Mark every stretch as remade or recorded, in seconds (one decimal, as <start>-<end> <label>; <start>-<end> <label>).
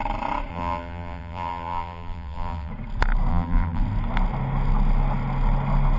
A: 0.0-0.5 recorded; 0.5-2.7 remade; 2.7-3.3 recorded; 3.3-3.8 remade; 3.8-6.0 recorded